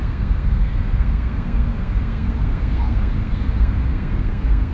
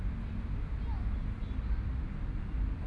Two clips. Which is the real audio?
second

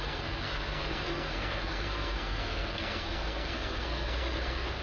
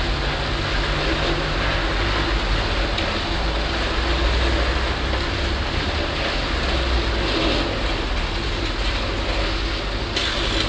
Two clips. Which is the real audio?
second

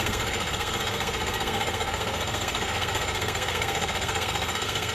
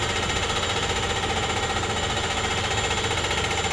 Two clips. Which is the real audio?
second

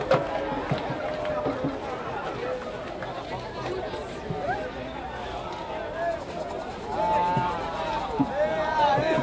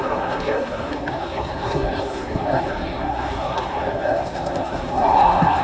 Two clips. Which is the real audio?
first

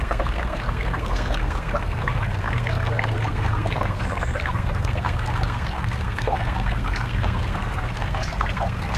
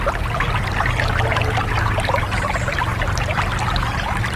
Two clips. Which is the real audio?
second